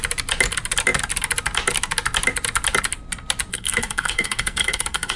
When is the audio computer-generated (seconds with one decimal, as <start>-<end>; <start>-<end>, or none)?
3.5-5.2

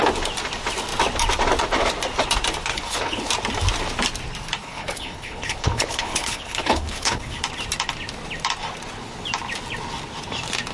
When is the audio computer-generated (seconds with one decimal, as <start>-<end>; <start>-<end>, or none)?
2.7-3.3; 4.6-7.4